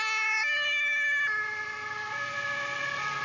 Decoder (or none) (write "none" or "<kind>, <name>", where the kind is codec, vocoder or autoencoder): none